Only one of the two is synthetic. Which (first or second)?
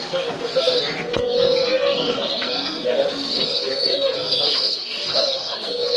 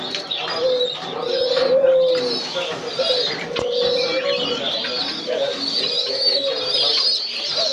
first